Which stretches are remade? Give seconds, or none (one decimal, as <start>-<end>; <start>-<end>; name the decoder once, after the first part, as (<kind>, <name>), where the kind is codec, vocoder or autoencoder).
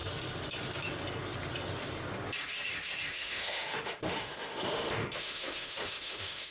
3.1-6.5 (autoencoder, DAC-VAE)